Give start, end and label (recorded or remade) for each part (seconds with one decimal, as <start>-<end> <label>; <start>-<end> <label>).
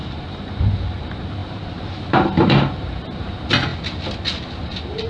0.0-0.5 remade; 0.5-1.4 recorded; 1.4-3.2 remade; 3.2-5.1 recorded